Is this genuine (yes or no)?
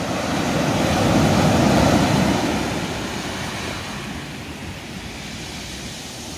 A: yes